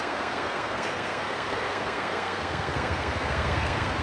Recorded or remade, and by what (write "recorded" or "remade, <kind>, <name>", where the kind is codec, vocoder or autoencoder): remade, codec, SNAC